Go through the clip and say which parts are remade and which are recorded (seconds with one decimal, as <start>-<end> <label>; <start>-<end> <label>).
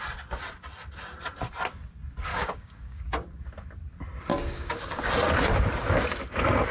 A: 0.0-2.3 recorded; 2.3-3.0 remade; 3.0-4.3 recorded; 4.3-5.1 remade; 5.1-6.7 recorded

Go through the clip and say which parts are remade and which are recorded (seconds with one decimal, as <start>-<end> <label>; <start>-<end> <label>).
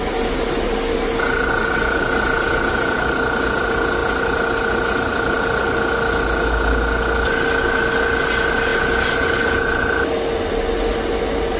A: 0.0-11.6 recorded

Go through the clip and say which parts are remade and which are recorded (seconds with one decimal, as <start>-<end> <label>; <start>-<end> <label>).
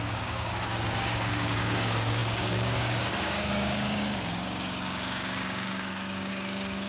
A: 0.0-6.9 remade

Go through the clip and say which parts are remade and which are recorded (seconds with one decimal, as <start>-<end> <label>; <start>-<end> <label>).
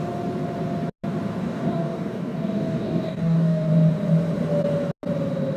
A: 0.0-1.4 recorded; 1.4-3.7 remade; 3.7-5.6 recorded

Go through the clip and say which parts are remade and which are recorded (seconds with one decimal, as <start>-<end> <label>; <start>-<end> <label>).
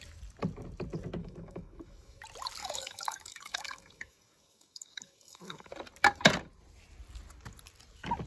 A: 0.0-1.2 recorded; 1.2-2.2 remade; 2.2-2.6 recorded; 2.6-5.7 remade; 5.7-8.3 recorded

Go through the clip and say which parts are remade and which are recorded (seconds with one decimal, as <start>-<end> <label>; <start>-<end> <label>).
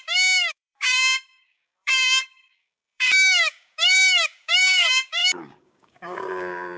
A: 0.0-6.8 remade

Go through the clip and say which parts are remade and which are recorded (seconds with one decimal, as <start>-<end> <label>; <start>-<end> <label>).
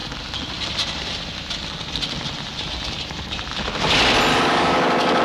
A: 0.0-4.3 recorded; 4.3-5.2 remade